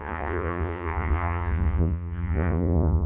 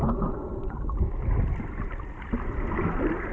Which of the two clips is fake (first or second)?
first